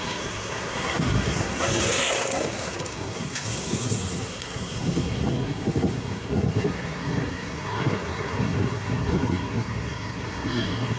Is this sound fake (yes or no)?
yes